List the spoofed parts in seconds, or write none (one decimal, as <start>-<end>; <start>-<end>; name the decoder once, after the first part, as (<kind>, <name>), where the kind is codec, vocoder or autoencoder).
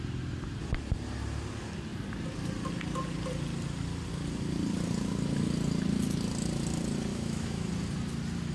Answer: 7.1-7.7 (autoencoder, DAC-VAE)